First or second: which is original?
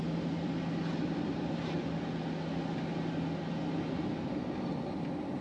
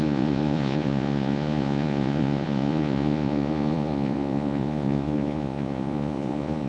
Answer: first